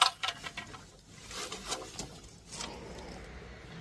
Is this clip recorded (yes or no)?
yes